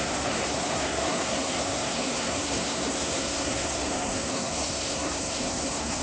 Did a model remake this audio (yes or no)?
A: yes